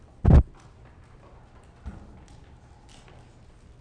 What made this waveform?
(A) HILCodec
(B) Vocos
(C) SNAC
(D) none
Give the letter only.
D